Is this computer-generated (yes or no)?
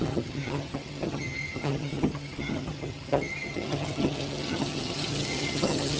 yes